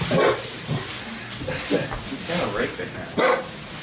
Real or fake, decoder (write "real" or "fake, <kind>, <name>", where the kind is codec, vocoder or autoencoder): real